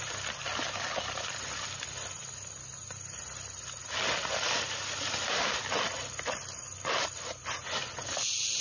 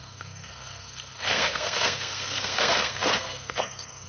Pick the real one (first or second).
first